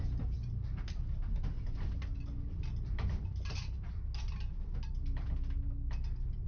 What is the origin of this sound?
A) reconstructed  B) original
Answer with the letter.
B